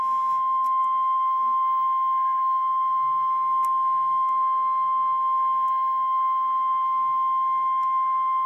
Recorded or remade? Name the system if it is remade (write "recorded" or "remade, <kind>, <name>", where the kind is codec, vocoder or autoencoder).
remade, codec, SNAC